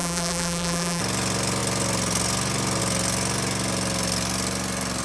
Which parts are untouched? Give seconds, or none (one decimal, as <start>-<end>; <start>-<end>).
1.0-5.0